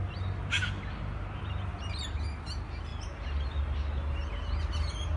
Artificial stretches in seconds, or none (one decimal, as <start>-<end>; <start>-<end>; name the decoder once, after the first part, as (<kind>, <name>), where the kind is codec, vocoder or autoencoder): none